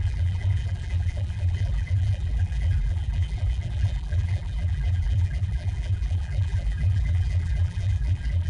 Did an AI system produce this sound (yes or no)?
yes